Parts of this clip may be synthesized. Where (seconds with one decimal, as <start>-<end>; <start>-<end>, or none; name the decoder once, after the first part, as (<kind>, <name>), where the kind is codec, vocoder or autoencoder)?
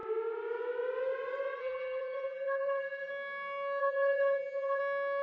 1.6-3.1 (vocoder, BigVGAN v2); 3.8-4.8